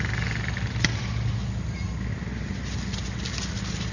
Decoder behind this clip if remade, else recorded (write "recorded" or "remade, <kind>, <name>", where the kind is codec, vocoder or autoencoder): recorded